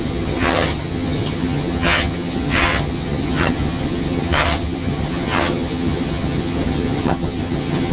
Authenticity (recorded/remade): remade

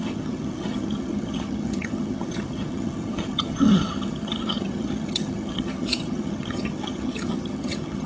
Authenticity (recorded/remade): remade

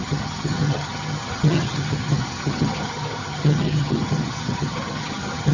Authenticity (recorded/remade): remade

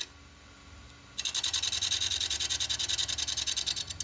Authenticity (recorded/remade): recorded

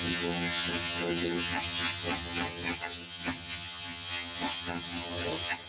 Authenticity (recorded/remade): remade